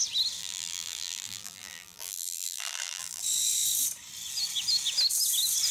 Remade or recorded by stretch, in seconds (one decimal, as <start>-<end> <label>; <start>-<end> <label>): 0.0-0.4 recorded; 0.4-3.2 remade; 3.2-5.7 recorded